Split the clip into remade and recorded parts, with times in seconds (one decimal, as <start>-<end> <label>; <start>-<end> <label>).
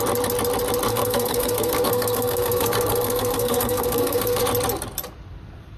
0.0-0.9 recorded; 0.9-4.4 remade; 4.4-5.8 recorded